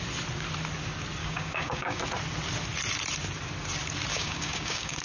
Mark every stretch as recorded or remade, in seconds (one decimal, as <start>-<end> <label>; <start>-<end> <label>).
0.0-1.2 recorded; 1.2-2.0 remade; 2.0-4.1 recorded; 4.1-5.0 remade